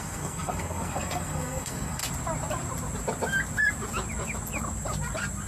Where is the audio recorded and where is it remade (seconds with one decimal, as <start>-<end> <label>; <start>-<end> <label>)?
0.0-2.0 remade; 2.0-5.5 recorded